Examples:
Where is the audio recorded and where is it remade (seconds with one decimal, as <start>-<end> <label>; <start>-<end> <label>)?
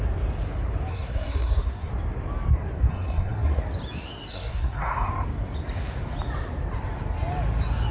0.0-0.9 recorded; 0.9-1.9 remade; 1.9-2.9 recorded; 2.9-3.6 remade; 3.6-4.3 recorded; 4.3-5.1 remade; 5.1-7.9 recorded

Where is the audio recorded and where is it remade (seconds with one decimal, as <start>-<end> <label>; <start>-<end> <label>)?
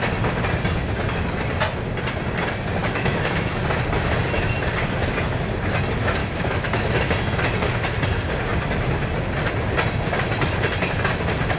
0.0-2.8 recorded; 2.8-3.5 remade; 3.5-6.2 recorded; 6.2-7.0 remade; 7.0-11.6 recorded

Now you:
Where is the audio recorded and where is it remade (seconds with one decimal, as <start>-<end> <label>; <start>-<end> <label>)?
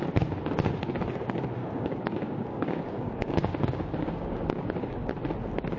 0.0-1.6 recorded; 1.6-5.1 remade; 5.1-5.8 recorded